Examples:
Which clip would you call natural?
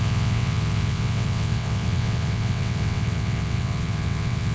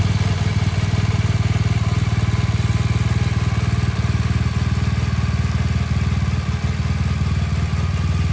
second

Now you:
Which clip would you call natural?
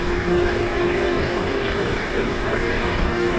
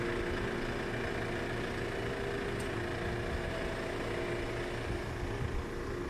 second